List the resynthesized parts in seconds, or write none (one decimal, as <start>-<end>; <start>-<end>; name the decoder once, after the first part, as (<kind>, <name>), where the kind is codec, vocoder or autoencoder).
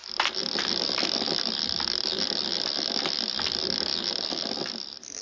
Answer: none